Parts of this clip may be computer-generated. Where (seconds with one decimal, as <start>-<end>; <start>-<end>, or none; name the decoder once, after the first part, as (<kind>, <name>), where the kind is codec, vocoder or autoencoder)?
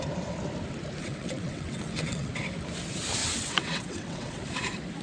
1.0-2.3 (vocoder, WaveNeXt); 3.2-4.4